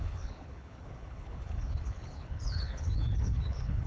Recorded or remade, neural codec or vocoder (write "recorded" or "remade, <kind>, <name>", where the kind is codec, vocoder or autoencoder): remade, codec, HILCodec